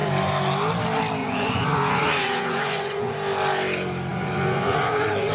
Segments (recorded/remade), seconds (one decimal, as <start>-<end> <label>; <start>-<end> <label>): 0.0-1.2 recorded; 1.2-3.1 remade; 3.1-4.1 recorded; 4.1-5.3 remade